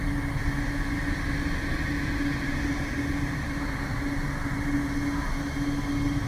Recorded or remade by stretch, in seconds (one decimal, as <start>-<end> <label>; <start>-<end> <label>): 0.0-6.3 recorded